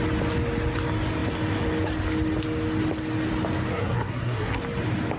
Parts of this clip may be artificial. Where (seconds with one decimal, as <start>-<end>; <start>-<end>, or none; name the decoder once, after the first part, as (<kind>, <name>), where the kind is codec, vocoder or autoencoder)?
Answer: 3.7-4.6 (codec, SNAC)

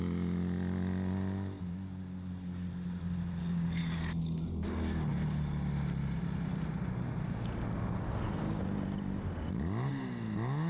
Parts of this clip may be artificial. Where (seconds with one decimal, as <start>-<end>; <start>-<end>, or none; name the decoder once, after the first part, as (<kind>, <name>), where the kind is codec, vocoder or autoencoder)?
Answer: none

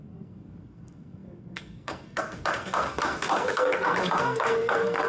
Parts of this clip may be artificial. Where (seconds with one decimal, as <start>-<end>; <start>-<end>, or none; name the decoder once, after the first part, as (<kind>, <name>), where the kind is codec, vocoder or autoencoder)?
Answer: 0.0-5.1 (codec, SNAC)

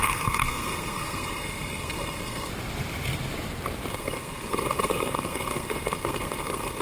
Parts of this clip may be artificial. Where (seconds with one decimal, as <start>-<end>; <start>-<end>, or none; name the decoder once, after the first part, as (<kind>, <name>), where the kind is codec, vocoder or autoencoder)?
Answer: 0.0-2.5 (codec, SNAC); 3.9-6.8

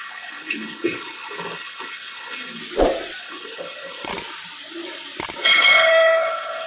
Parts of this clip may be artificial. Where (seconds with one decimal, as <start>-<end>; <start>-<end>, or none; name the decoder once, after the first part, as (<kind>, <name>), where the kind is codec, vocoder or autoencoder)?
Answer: 0.0-2.6 (codec, HILCodec); 3.2-4.1; 5.4-6.7

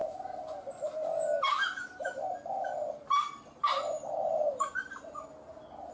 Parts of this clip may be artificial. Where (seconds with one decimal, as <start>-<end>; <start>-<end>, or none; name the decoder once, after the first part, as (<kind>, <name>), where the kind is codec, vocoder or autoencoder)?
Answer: none